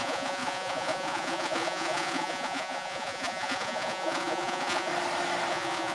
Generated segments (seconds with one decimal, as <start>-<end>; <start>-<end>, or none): 0.0-4.9; 5.5-5.9